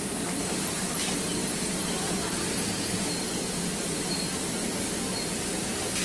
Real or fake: real